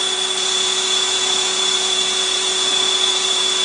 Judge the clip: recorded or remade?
remade